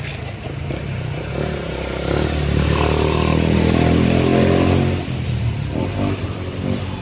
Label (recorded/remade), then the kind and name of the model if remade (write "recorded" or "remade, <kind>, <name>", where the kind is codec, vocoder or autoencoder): recorded